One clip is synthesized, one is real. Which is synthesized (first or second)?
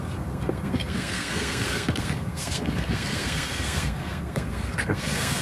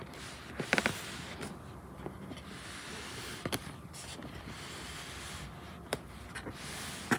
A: first